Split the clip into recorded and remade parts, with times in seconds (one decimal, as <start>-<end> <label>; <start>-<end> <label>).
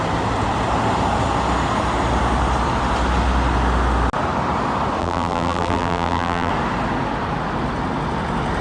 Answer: 0.0-5.0 recorded; 5.0-6.5 remade; 6.5-8.6 recorded